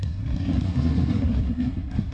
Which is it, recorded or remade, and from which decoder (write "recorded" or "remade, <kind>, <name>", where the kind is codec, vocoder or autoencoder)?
remade, codec, SNAC